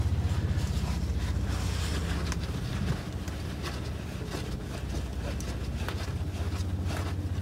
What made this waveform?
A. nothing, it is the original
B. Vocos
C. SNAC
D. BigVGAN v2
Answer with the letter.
A